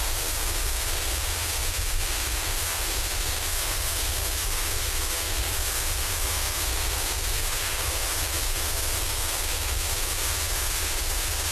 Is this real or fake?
fake